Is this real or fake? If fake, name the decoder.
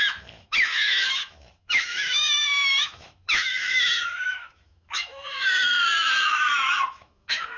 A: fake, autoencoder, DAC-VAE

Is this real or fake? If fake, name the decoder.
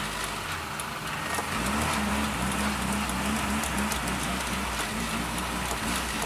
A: real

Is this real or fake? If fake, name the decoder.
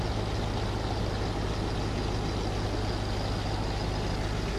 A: real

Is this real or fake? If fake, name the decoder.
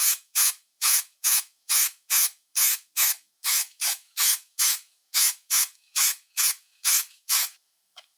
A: fake, autoencoder, DAC-VAE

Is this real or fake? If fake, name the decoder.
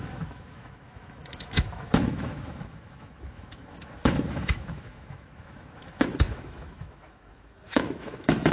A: fake, autoencoder, DAC-VAE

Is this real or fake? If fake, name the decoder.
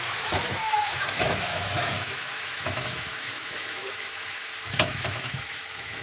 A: fake, autoencoder, DAC-VAE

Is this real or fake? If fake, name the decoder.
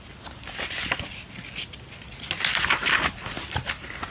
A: real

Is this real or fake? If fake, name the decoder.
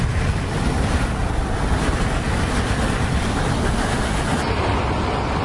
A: real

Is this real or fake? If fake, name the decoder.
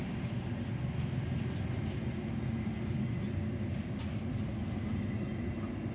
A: real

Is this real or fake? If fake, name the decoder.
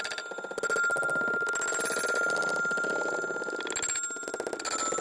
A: real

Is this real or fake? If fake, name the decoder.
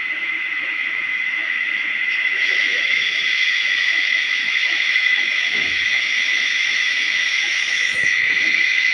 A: fake, autoencoder, DAC-VAE